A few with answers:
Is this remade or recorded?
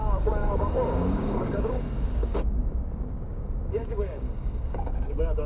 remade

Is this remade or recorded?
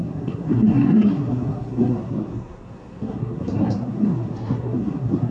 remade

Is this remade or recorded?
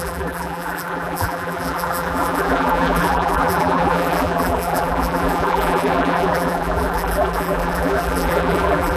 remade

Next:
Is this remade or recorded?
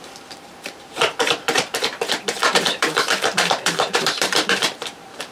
remade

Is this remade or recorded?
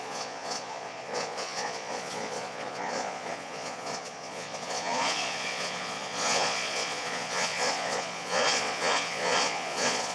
remade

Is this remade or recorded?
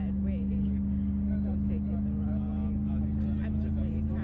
recorded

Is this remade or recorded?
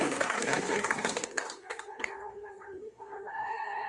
remade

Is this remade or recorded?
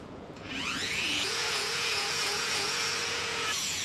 remade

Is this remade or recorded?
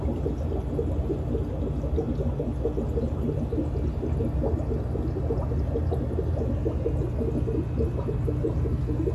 recorded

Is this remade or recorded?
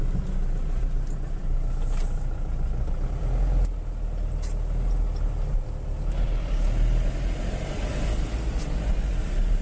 recorded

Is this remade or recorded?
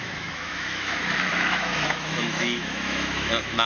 remade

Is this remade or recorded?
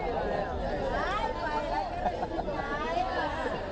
recorded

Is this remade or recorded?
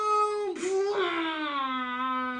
recorded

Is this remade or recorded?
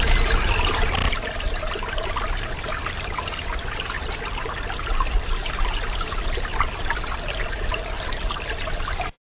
recorded